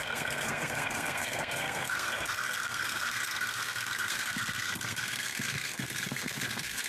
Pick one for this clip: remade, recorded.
remade